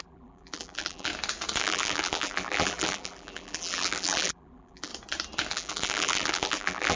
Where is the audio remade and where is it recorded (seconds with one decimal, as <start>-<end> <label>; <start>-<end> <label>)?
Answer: 0.0-1.1 remade; 1.1-1.6 recorded; 1.6-4.9 remade; 4.9-5.5 recorded; 5.5-7.0 remade